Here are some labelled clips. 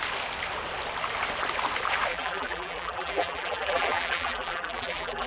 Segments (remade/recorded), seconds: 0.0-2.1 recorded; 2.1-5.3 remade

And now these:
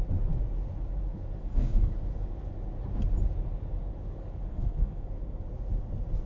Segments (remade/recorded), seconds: 0.0-1.4 recorded; 1.4-1.9 remade; 1.9-4.5 recorded; 4.5-5.1 remade; 5.1-6.3 recorded

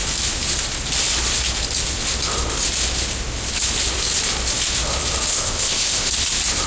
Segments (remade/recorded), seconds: 0.0-5.3 recorded; 5.3-6.1 remade; 6.1-6.7 recorded

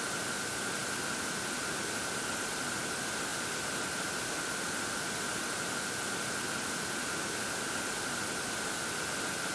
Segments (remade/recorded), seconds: 0.0-9.5 recorded

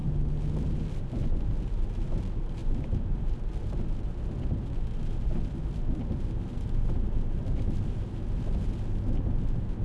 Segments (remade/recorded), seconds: 0.0-9.8 recorded

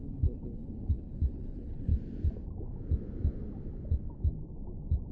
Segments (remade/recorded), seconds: 0.0-1.9 remade; 1.9-5.1 recorded

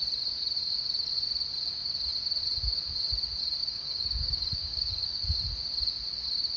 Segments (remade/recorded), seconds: 0.0-3.6 recorded; 3.6-5.2 remade; 5.2-6.6 recorded

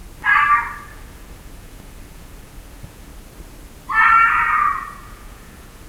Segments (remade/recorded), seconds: 0.0-0.8 recorded; 0.8-3.1 remade; 3.1-4.3 recorded; 4.3-5.9 remade